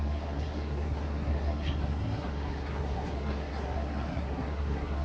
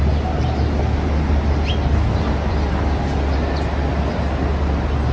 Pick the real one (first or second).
second